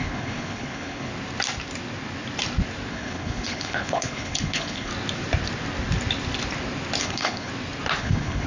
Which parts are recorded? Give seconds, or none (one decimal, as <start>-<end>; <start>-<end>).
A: 1.1-2.9; 4.9-7.0; 7.5-8.0